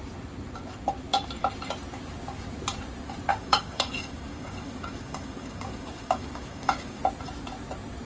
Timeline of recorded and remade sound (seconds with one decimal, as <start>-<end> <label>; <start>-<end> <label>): 0.0-3.3 recorded; 3.3-7.0 remade; 7.0-8.0 recorded